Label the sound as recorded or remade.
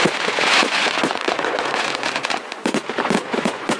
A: remade